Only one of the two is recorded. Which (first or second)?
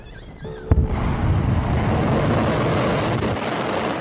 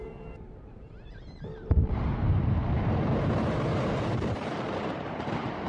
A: first